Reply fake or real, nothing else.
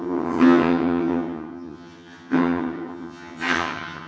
fake